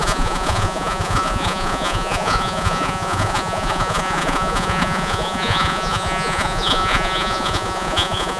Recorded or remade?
remade